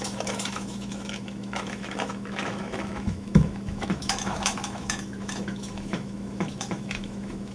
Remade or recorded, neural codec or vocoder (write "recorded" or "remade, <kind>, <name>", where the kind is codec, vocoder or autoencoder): remade, autoencoder, DAC-VAE